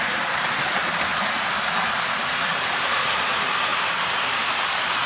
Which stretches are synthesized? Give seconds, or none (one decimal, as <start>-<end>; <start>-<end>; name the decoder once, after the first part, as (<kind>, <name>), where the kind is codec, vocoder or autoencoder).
1.1-1.9 (vocoder, BigVGAN v2); 2.5-3.1; 3.7-4.2